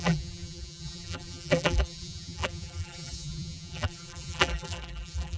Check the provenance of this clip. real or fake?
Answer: fake